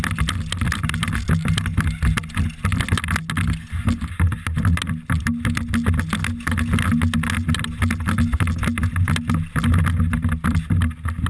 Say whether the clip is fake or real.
real